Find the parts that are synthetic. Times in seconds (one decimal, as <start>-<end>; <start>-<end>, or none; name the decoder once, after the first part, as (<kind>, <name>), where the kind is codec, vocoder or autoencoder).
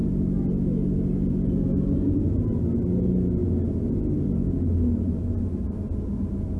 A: none